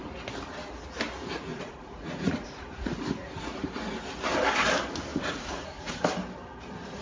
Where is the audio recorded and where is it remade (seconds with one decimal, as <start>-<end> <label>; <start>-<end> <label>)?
0.0-1.5 recorded; 1.5-3.0 remade; 3.0-5.1 recorded; 5.1-6.0 remade; 6.0-7.0 recorded